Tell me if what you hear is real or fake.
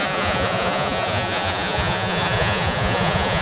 fake